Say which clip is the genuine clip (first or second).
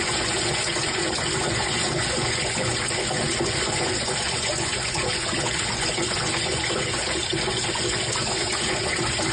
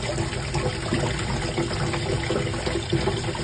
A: second